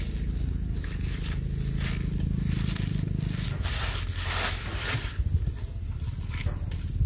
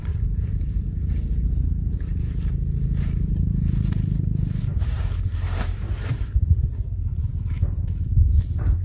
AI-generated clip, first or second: second